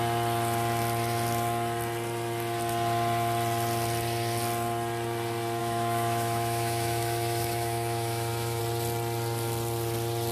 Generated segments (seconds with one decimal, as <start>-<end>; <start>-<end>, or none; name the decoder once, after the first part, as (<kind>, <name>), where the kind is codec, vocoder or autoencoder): 5.6-8.6 (autoencoder, DAC-VAE)